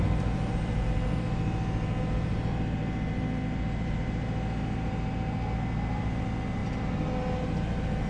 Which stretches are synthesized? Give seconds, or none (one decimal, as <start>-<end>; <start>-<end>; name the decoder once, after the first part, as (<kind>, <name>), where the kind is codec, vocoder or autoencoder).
none